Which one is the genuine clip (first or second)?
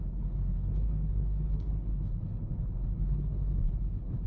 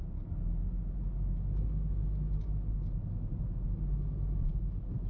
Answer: second